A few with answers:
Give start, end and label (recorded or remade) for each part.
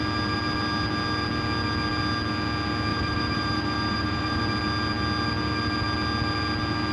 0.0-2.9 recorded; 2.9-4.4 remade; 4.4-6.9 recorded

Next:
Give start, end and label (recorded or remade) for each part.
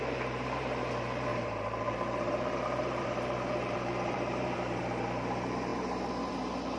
0.0-1.3 recorded; 1.3-4.8 remade; 4.8-6.8 recorded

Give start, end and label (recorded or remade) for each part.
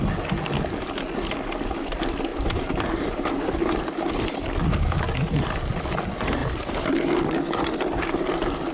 0.0-2.3 recorded; 2.3-3.5 remade; 3.5-6.4 recorded; 6.4-6.9 remade; 6.9-8.7 recorded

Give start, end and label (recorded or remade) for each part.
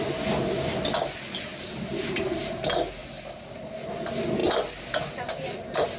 0.0-1.5 recorded; 1.5-2.6 remade; 2.6-3.0 recorded; 3.0-3.6 remade; 3.6-6.0 recorded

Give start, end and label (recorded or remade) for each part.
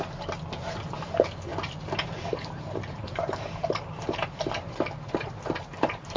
0.0-1.5 recorded; 1.5-4.8 remade; 4.8-6.2 recorded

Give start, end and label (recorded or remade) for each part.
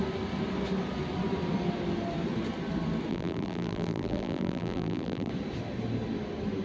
0.0-3.1 recorded; 3.1-5.3 remade; 5.3-6.6 recorded